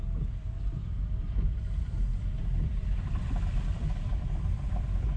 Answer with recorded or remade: recorded